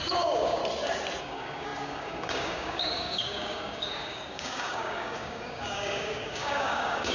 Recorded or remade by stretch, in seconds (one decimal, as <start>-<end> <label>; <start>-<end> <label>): 0.0-0.6 remade; 0.6-1.2 recorded; 1.2-7.1 remade